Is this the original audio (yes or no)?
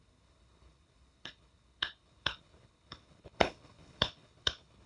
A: no